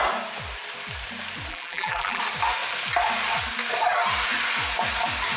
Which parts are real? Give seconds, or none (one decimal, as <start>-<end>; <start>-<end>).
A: 0.0-1.5; 2.2-5.4

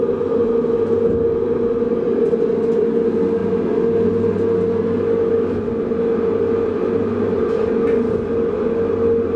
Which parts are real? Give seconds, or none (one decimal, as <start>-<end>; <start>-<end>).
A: 0.0-9.4

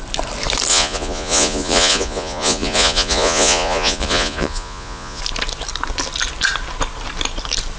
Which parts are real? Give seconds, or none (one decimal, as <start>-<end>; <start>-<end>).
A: 0.0-0.7; 5.2-7.8

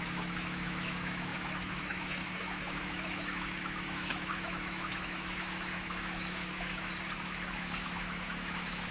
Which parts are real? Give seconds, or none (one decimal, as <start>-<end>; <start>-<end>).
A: 6.9-7.5

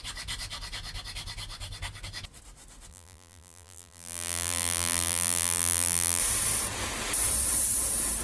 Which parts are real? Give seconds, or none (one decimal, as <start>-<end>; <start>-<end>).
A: 0.0-2.9; 6.2-8.2